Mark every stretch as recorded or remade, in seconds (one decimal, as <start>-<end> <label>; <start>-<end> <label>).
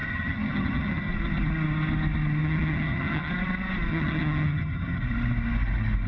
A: 0.0-1.1 remade; 1.1-2.4 recorded; 2.4-3.3 remade; 3.3-3.9 recorded; 3.9-5.0 remade; 5.0-6.1 recorded